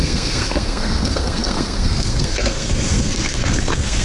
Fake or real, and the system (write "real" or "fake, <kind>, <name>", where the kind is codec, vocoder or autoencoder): fake, codec, SNAC